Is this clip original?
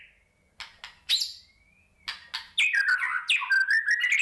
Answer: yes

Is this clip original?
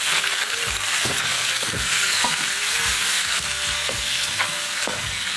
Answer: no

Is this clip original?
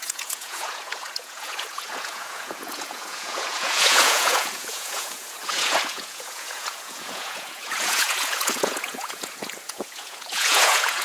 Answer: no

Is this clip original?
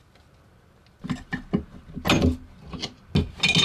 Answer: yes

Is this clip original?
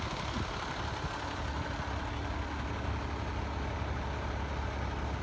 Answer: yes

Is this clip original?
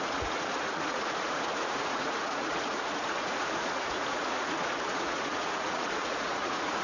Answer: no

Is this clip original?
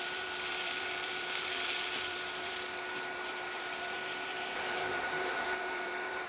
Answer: no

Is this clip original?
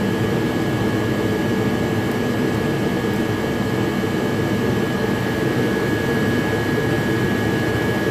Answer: yes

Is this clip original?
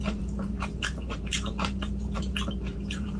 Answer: no